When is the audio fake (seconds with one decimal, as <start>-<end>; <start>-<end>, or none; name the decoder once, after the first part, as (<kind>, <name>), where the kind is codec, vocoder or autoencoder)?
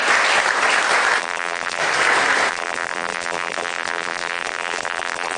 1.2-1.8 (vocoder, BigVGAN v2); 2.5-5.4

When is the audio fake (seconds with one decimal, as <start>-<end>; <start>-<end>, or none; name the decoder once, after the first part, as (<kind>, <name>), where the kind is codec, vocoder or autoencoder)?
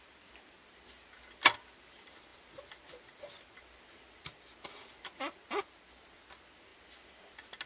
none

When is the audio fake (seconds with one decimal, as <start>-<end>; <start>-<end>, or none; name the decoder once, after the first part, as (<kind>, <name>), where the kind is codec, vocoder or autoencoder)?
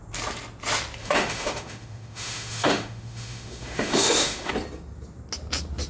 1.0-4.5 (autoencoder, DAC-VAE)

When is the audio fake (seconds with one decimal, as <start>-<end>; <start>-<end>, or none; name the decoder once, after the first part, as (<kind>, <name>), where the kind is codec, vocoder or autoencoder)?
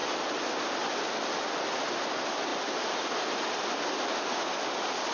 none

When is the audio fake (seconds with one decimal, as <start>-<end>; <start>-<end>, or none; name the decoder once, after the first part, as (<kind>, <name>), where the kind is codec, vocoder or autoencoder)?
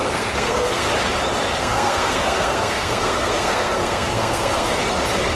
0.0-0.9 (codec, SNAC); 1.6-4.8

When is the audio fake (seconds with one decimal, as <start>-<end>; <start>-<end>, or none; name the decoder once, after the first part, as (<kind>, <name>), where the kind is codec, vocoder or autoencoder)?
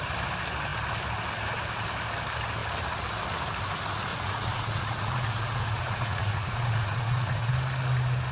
4.1-7.5 (vocoder, Vocos)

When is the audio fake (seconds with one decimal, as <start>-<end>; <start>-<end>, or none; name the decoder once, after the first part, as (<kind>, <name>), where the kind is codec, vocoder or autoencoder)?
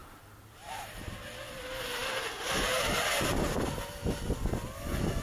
0.0-1.0 (vocoder, BigVGAN v2)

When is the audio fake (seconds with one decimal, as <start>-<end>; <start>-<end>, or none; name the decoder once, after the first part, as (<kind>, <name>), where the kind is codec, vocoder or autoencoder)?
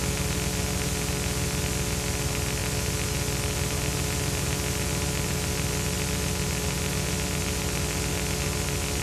none